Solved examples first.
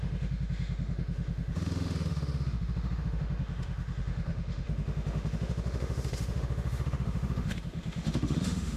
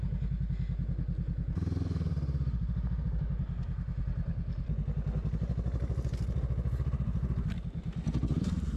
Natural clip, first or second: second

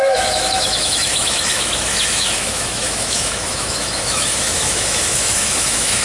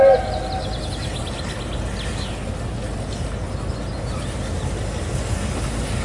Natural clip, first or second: second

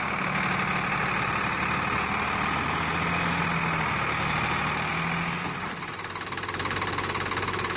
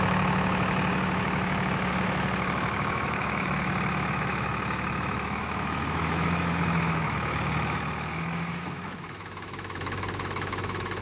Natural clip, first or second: first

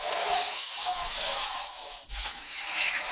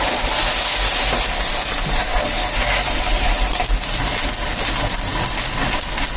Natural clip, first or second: second